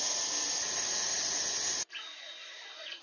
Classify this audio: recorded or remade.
recorded